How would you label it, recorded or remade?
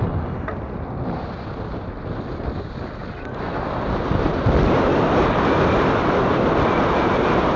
recorded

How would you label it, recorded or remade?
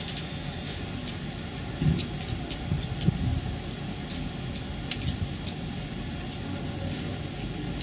recorded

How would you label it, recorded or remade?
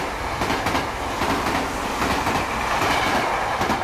recorded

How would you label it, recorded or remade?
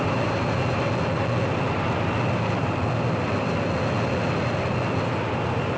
recorded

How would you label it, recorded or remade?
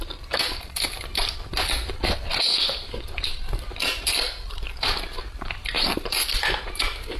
remade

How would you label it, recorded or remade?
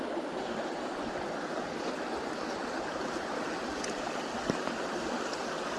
recorded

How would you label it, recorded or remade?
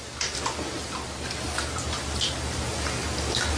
recorded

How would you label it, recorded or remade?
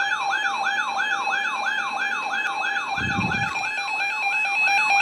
recorded